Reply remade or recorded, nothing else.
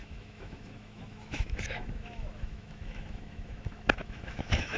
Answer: remade